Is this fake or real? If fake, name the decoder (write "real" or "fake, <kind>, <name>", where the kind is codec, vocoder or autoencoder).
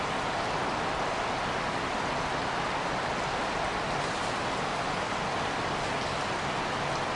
real